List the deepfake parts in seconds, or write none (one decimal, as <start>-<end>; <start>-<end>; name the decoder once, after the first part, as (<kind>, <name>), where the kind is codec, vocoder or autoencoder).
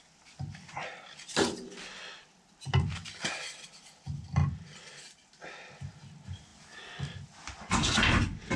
none